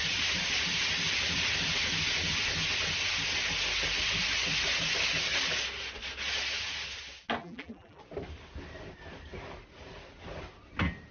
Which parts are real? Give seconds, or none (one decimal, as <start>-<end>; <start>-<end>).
0.0-7.4; 8.0-11.1